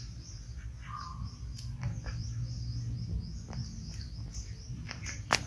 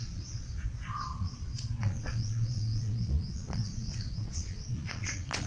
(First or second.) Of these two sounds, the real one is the first